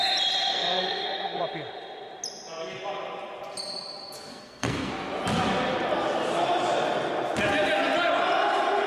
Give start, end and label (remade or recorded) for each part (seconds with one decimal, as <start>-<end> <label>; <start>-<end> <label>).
0.0-0.5 recorded; 0.5-1.4 remade; 1.4-4.3 recorded; 4.3-4.9 remade; 4.9-8.9 recorded